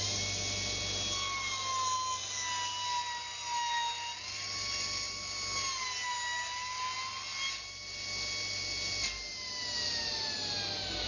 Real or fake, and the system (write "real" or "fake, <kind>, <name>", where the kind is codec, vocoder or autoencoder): real